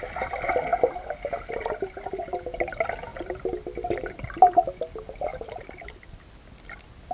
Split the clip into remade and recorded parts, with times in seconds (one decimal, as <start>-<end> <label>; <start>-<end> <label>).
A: 0.0-5.3 recorded; 5.3-6.1 remade; 6.1-7.1 recorded